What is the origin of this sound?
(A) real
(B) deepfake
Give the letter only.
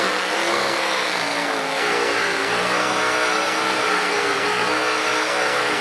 B